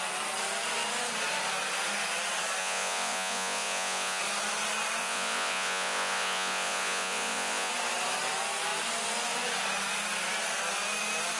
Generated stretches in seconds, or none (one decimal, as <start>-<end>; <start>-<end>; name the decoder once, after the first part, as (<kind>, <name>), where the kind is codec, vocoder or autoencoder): 2.6-4.2 (vocoder, Vocos); 5.0-7.7